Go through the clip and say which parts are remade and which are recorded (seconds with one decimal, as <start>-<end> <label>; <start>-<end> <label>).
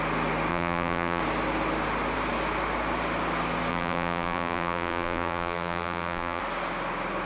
0.0-0.5 recorded; 0.5-1.2 remade; 1.2-3.7 recorded; 3.7-6.4 remade; 6.4-7.2 recorded